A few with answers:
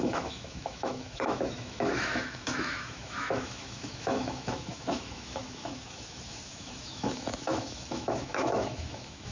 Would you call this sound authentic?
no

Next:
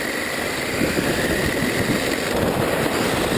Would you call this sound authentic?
yes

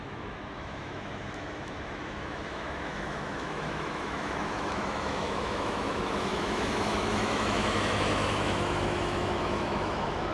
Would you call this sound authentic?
no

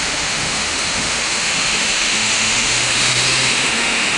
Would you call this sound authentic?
no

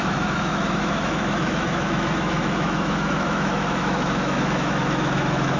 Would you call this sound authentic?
no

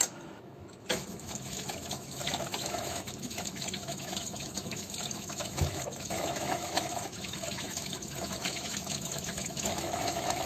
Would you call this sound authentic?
no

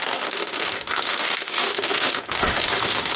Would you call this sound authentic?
no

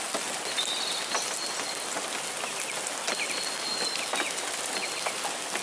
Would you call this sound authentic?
yes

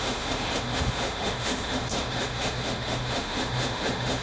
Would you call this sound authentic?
no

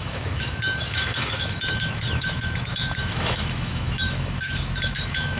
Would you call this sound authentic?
no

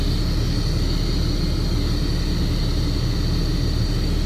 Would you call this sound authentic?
yes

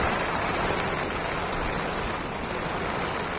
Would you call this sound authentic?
yes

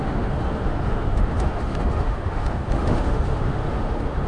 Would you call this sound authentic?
no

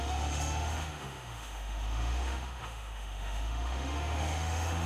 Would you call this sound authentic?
no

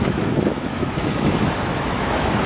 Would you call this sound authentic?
no